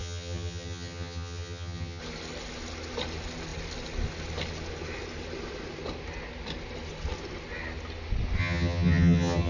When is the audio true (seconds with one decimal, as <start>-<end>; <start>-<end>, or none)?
2.0-8.4